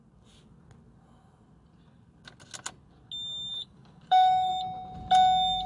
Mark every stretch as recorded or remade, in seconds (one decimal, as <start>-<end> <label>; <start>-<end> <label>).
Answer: 0.0-3.5 recorded; 3.5-4.5 remade; 4.5-5.7 recorded